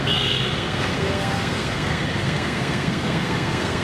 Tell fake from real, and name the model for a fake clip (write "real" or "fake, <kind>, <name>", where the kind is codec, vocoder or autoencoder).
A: fake, codec, SNAC